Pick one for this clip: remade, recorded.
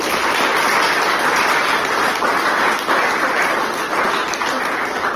recorded